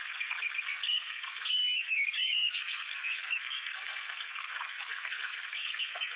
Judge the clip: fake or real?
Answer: fake